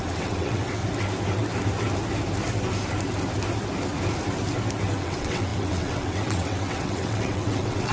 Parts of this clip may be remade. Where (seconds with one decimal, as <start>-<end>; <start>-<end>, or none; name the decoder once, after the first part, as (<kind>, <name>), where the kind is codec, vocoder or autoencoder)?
0.0-0.8 (vocoder, WaveNeXt); 5.0-7.9